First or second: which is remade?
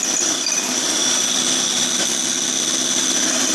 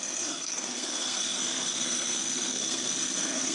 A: second